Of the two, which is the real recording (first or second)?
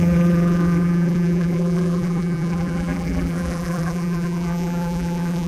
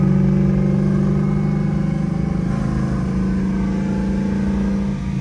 second